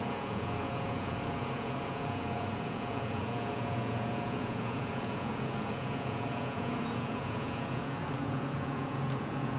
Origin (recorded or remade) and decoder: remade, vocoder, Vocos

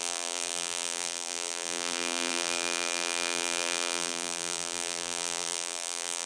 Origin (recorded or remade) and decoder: remade, vocoder, BigVGAN v2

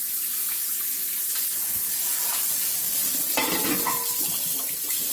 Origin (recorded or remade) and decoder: recorded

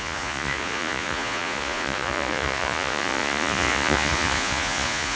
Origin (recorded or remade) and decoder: remade, vocoder, Vocos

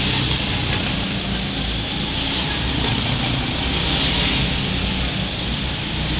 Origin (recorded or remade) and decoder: recorded